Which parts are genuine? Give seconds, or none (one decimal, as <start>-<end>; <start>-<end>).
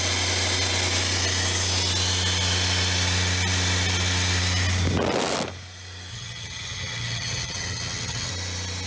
0.0-6.1; 8.3-8.9